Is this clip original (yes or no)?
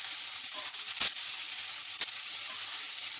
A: yes